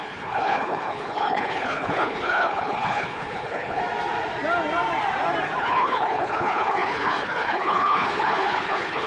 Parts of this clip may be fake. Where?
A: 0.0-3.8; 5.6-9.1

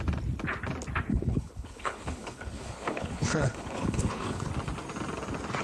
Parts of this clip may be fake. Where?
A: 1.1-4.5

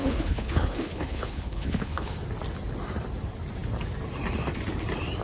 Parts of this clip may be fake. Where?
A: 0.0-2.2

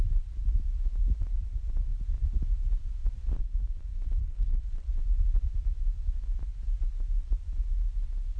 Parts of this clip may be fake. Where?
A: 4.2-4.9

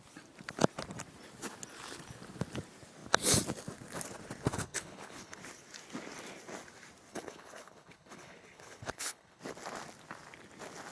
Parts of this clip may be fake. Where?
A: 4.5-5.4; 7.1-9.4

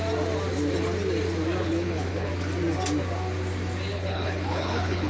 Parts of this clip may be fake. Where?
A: 1.6-2.3; 3.9-5.1

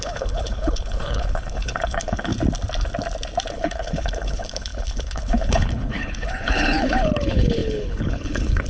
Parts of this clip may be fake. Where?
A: 0.0-2.3; 3.5-8.7